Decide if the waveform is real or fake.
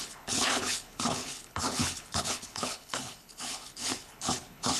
fake